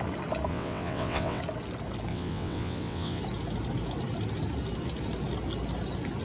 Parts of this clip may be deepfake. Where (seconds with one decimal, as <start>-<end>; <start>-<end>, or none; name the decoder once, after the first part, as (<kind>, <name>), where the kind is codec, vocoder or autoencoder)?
0.5-1.4 (vocoder, WaveNeXt); 2.1-3.2